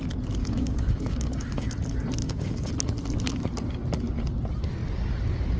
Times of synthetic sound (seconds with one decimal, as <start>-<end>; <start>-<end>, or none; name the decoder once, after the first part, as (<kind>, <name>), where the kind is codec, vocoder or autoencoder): 0.4-1.7 (codec, DAC); 2.2-2.7